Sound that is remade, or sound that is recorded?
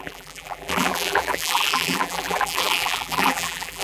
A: remade